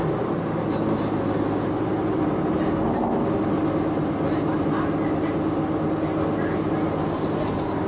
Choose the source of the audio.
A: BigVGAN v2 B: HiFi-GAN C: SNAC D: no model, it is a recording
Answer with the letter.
D